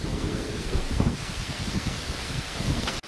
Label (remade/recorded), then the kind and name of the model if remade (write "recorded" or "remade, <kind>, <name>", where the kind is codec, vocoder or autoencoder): remade, codec, SNAC